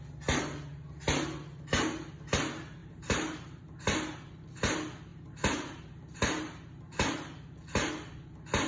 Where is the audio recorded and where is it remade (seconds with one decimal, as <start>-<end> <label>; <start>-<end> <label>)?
0.0-2.8 recorded; 2.8-3.6 remade; 3.6-5.1 recorded; 5.1-6.8 remade; 6.8-8.7 recorded